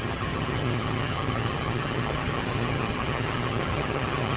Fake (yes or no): yes